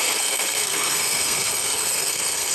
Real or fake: fake